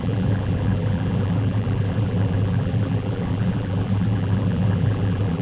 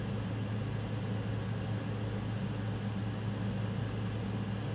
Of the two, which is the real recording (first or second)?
second